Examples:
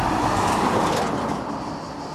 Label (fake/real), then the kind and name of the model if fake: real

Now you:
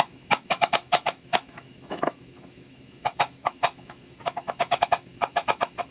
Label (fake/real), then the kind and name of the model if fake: fake, autoencoder, DAC-VAE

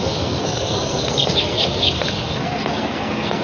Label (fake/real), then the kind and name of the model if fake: fake, codec, SNAC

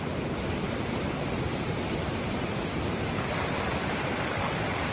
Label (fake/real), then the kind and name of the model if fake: fake, vocoder, BigVGAN v2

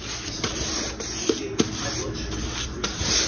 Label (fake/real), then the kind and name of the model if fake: real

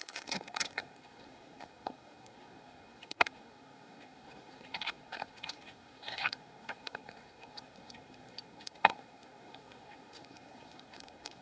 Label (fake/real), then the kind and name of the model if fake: fake, codec, SNAC